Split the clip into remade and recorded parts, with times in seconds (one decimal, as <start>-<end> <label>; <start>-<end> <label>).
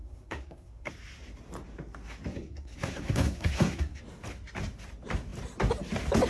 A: 0.0-0.9 remade; 0.9-2.3 recorded; 2.3-4.0 remade; 4.0-6.3 recorded